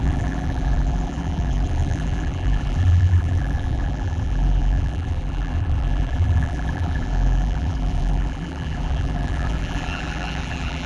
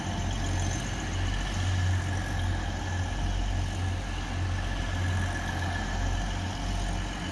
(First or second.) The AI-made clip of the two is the first